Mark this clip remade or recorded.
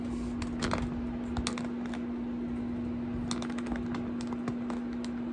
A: recorded